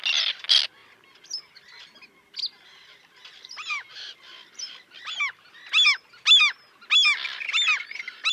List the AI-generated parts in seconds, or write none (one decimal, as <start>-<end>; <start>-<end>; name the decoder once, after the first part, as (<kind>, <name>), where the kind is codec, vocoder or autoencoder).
none